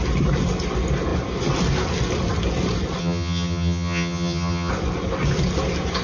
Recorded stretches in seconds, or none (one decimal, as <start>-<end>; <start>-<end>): 0.0-3.0; 4.7-6.0